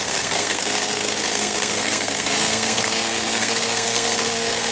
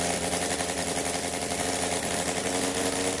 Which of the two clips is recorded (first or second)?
second